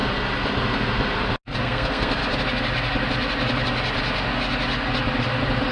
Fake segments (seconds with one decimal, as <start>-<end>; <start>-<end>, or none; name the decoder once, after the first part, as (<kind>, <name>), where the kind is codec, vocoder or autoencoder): 1.6-2.2 (codec, SNAC)